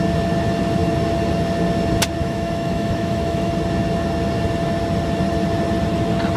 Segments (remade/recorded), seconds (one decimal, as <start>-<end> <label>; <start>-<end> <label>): 0.0-2.2 recorded; 2.2-3.5 remade; 3.5-6.4 recorded